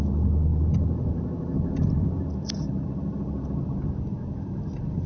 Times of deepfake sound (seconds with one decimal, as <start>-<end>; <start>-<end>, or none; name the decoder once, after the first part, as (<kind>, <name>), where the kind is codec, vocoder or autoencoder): none